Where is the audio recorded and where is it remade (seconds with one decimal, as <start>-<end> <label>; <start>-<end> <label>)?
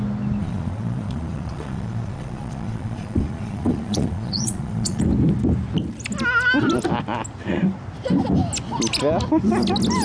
0.0-0.4 recorded; 0.4-5.0 remade; 5.0-10.0 recorded